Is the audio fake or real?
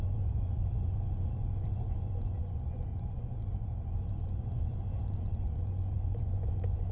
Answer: fake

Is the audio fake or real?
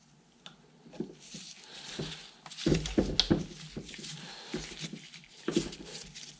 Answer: real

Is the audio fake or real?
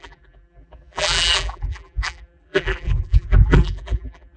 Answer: fake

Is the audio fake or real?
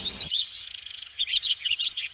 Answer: fake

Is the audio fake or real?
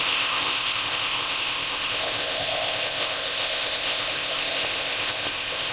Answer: fake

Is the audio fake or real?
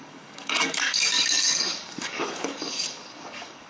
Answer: fake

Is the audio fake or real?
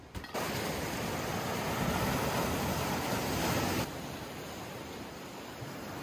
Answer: fake